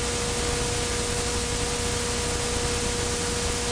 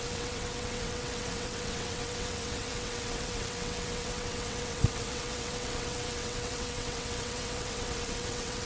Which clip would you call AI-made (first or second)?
second